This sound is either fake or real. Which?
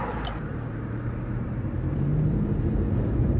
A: fake